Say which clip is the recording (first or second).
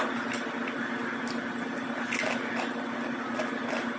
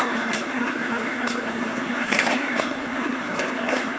first